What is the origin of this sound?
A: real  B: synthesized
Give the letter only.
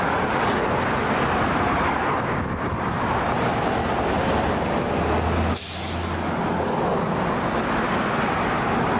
A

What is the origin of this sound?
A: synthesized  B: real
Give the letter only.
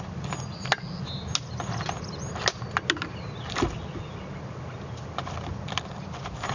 B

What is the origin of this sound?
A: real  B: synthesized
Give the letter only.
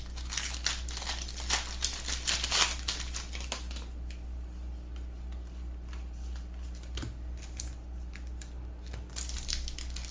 A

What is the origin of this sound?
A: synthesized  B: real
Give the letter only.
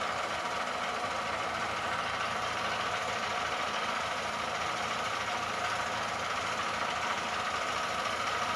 B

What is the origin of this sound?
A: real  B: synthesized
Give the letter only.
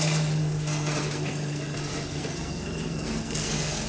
B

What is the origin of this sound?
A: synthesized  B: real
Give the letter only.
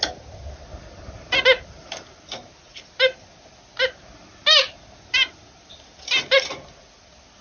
B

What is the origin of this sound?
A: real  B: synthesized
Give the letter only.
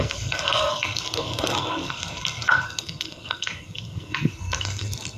B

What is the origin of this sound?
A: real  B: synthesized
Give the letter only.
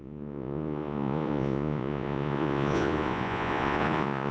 B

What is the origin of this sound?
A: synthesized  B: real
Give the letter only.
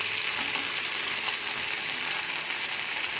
B